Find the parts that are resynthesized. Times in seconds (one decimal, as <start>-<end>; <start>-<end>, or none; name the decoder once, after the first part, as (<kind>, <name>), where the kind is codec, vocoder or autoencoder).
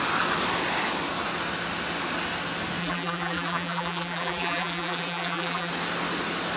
2.8-5.7 (vocoder, BigVGAN v2)